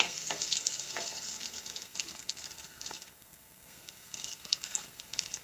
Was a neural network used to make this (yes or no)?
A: yes